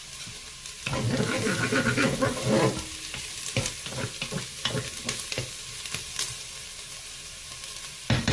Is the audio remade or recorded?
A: recorded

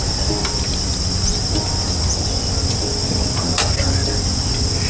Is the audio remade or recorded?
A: recorded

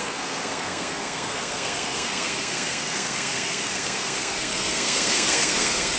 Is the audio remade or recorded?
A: remade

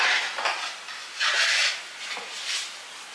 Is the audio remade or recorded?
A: recorded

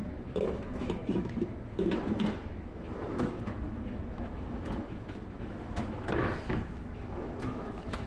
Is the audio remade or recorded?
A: remade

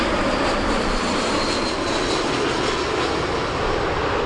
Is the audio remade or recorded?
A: recorded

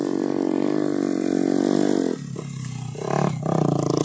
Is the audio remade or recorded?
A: recorded